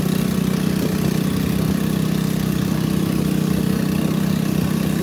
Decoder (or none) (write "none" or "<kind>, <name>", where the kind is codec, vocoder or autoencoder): none